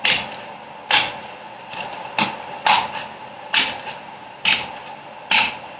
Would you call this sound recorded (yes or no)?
yes